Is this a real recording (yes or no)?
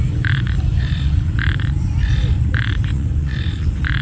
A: no